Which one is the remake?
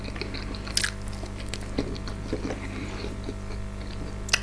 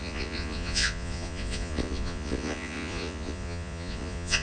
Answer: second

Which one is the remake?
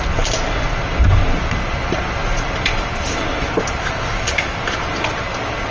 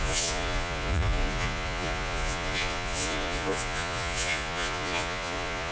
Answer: second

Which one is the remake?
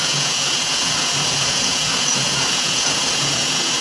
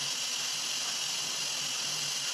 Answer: first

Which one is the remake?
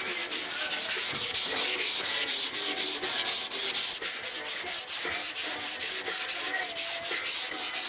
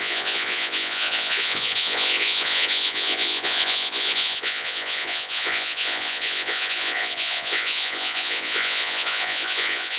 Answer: second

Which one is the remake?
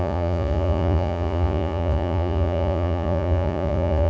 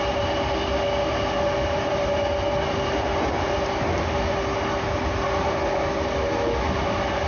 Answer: first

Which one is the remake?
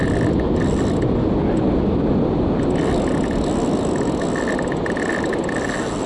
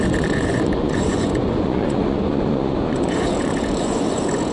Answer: second